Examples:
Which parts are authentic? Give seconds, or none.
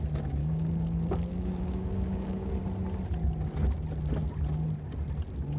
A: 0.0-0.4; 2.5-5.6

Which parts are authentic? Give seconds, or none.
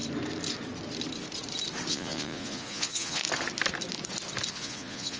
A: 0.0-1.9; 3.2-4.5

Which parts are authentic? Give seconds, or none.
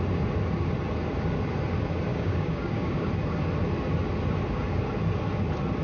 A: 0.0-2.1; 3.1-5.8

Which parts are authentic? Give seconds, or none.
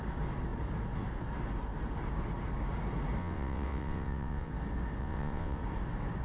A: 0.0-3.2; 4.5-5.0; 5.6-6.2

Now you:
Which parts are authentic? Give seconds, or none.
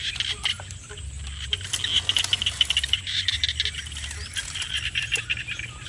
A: 0.0-5.9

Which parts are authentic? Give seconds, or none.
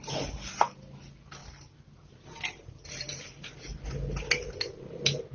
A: 0.0-5.3